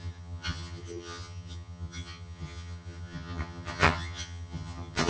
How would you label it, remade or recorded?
remade